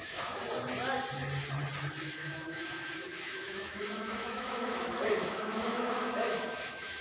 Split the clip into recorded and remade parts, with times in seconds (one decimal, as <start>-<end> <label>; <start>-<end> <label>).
0.0-0.4 remade; 0.4-2.0 recorded; 2.0-7.0 remade